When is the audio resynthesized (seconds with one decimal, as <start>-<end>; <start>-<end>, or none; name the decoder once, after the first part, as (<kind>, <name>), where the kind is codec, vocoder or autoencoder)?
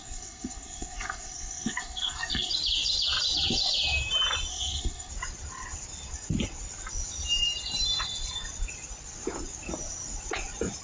0.0-2.5 (codec, SNAC); 4.5-5.1